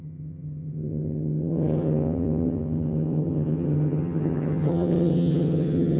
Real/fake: fake